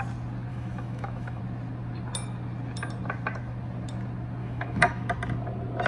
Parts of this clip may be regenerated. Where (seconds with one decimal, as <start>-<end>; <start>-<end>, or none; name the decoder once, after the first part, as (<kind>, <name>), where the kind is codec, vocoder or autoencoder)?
0.5-1.4 (autoencoder, DAC-VAE); 4.4-5.1